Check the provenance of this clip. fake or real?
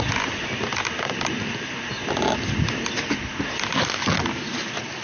real